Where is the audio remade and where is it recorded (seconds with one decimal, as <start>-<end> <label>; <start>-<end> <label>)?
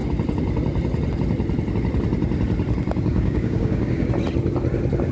0.0-3.1 recorded; 3.1-4.1 remade; 4.1-5.1 recorded